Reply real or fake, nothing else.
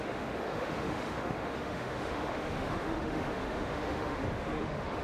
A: fake